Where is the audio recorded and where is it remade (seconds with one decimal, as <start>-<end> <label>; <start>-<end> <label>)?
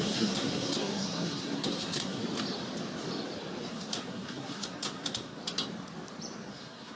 0.0-2.2 remade; 2.2-3.7 recorded; 3.7-5.4 remade; 5.4-6.5 recorded; 6.5-7.0 remade